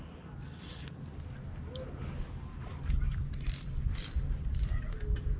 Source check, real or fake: real